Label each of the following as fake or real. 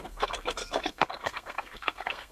fake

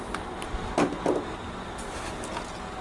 real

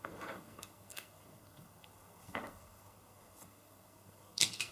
fake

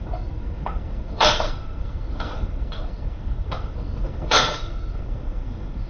fake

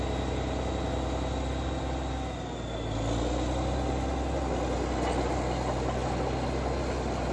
real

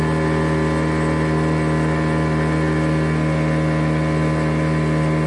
real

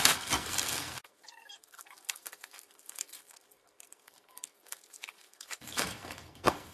fake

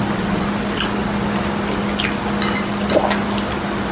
real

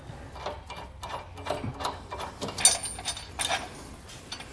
real